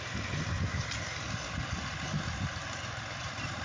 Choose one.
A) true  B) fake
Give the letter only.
A